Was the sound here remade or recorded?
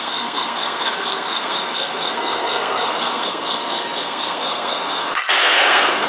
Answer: remade